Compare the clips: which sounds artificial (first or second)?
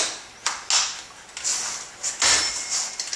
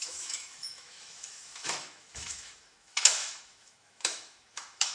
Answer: second